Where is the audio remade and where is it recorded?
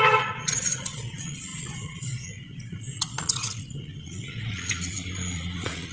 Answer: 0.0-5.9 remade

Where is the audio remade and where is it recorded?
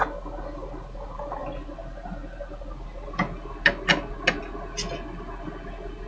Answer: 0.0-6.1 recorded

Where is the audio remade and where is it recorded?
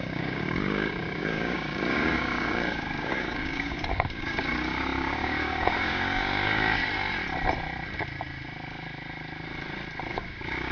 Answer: 0.0-6.8 remade; 6.8-10.1 recorded; 10.1-10.7 remade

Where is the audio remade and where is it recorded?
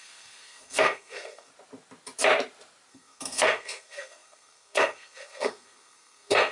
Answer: 0.0-1.5 remade; 1.5-2.9 recorded; 2.9-6.5 remade